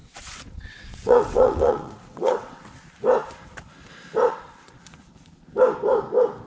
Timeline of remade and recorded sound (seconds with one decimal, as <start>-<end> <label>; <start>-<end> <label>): 0.0-2.8 remade; 2.8-4.3 recorded; 4.3-4.8 remade; 4.8-6.5 recorded